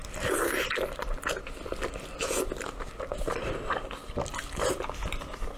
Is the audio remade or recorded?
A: remade